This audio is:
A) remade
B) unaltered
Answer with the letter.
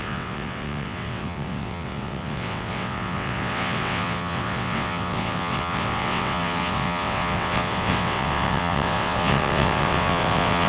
A